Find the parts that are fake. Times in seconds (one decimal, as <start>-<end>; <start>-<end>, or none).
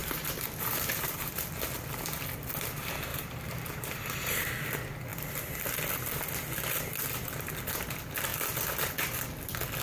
0.0-1.4; 3.1-4.5